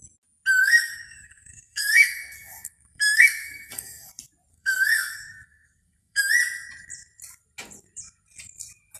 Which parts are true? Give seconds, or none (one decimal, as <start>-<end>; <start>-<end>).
0.0-0.6; 4.1-4.5; 6.3-9.0